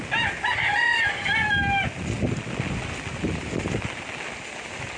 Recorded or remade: recorded